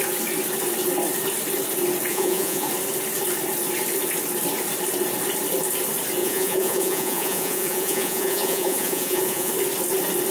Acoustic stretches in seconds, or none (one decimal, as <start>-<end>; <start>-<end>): 0.0-2.1; 2.7-6.2; 9.5-10.3